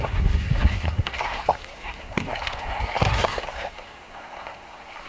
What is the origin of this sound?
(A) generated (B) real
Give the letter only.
A